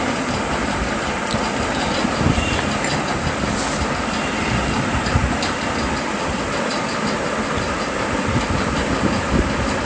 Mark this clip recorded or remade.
recorded